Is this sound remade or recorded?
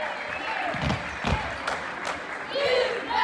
recorded